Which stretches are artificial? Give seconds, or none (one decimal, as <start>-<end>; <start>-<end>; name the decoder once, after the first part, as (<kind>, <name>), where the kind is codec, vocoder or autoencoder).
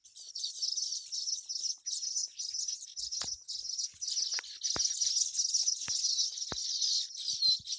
none